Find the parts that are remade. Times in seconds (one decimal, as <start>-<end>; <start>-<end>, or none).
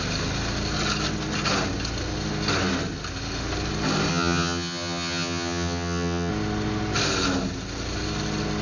4.1-6.3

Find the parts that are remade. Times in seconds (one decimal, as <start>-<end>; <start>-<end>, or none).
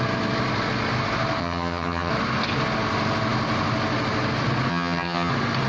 1.4-2.1; 4.7-5.3